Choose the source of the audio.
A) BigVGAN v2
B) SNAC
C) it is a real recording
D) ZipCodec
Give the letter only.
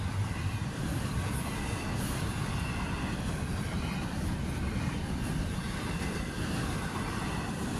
A